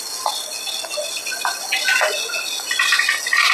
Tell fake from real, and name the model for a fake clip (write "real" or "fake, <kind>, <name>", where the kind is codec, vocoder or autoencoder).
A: real